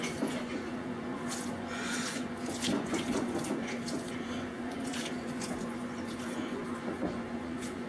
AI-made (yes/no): yes